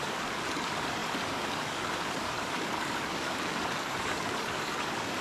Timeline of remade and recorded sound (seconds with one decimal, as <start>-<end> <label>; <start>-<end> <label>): 0.0-5.2 remade

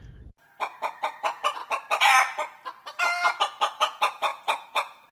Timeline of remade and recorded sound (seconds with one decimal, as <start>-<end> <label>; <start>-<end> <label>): 0.0-1.6 remade; 1.6-3.4 recorded; 3.4-5.1 remade